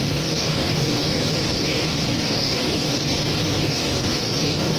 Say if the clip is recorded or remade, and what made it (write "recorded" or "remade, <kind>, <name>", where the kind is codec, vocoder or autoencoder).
remade, codec, DAC